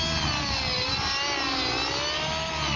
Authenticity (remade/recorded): recorded